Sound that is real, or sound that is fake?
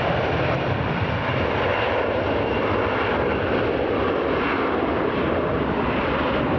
fake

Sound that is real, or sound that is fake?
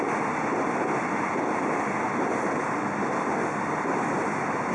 real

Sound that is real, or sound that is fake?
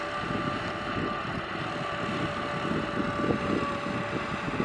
real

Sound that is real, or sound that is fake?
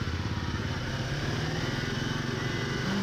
fake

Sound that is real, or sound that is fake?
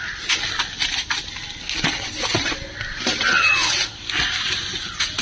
real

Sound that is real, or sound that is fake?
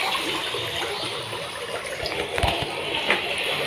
real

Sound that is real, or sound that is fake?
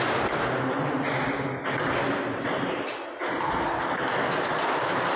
real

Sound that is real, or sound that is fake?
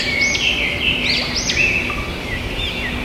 real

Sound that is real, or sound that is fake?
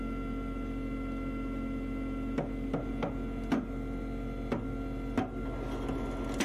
real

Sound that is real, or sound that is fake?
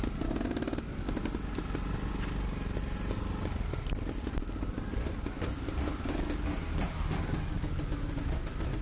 real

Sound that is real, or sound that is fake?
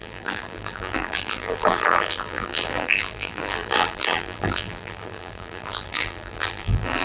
fake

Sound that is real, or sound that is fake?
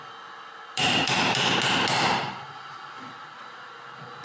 real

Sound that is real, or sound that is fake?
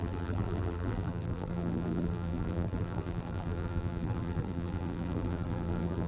fake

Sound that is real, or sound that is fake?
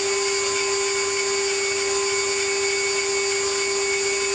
real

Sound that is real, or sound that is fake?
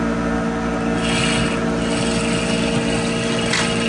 real